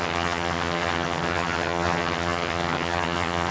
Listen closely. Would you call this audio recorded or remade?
remade